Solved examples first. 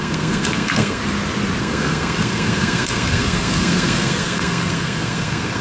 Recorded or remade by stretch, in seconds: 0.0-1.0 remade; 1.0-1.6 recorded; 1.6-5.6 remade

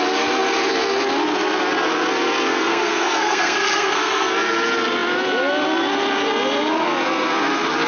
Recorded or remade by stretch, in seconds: 0.0-2.5 recorded; 2.5-4.3 remade; 4.3-7.9 recorded

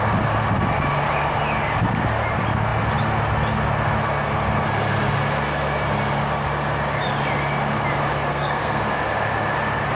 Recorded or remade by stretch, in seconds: 0.0-8.3 recorded; 8.3-8.8 remade; 8.8-9.9 recorded